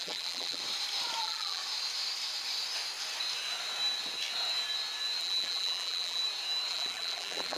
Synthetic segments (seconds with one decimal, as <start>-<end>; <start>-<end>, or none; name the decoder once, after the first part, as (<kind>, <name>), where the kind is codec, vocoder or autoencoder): 0.0-0.6 (vocoder, BigVGAN v2); 1.2-1.6; 5.2-6.2; 6.7-7.6